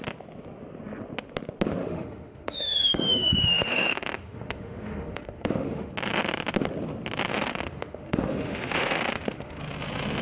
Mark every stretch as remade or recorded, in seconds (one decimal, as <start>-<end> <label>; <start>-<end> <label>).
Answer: 0.0-1.8 recorded; 1.8-5.9 remade; 5.9-7.3 recorded; 7.3-9.6 remade; 9.6-10.2 recorded